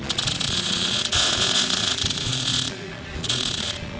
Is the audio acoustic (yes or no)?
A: no